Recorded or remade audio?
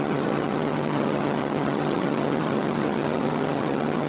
remade